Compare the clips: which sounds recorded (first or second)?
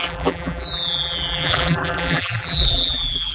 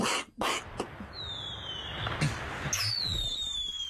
second